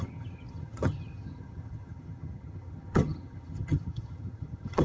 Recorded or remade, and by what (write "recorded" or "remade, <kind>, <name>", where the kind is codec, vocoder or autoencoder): remade, vocoder, HiFi-GAN